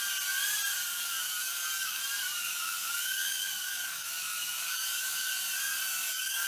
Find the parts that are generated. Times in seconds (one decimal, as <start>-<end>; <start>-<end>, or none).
0.9-2.0; 2.4-5.4; 5.9-6.5